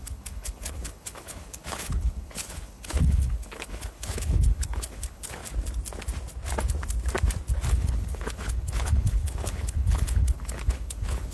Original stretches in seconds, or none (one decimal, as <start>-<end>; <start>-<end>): 5.4-7.7